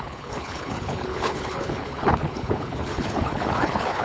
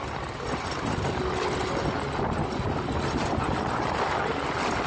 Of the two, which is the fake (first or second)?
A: first